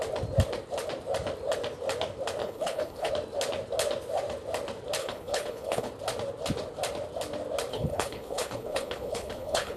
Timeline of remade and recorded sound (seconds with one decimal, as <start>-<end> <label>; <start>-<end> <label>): 0.0-2.4 recorded; 2.4-3.1 remade; 3.1-5.0 recorded; 5.0-5.9 remade; 5.9-7.7 recorded; 7.7-9.8 remade